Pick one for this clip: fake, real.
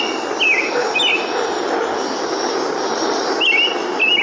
real